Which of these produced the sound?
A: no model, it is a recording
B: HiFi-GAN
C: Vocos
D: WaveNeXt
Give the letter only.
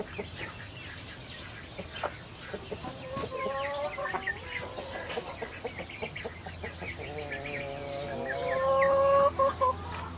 A